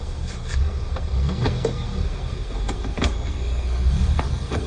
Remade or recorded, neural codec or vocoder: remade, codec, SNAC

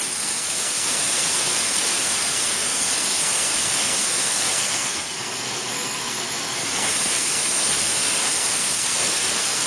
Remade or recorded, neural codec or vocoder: remade, codec, SNAC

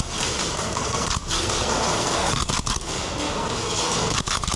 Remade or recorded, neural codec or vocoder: remade, codec, SNAC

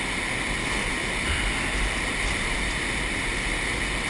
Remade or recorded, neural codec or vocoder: recorded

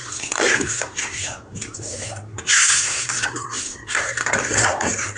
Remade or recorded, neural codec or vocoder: remade, codec, SNAC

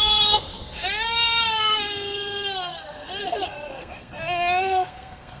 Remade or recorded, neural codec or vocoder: remade, codec, SNAC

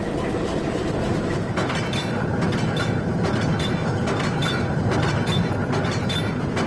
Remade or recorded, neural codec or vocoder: recorded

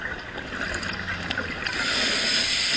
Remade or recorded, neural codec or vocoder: recorded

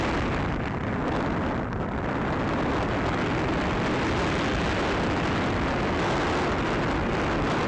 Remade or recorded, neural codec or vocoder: recorded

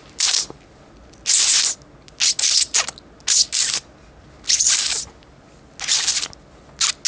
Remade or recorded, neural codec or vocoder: recorded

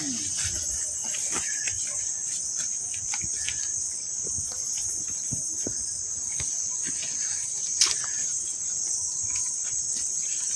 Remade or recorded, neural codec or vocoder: recorded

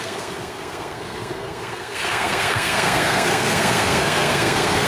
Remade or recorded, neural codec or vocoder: remade, codec, SNAC